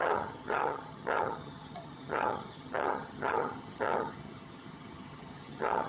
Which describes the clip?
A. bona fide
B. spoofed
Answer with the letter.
B